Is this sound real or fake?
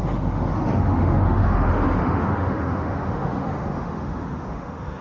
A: fake